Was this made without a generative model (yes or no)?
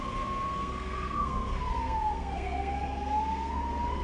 no